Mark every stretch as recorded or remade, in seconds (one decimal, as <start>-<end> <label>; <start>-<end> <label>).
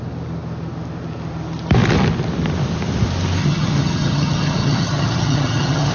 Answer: 0.0-3.4 recorded; 3.4-5.9 remade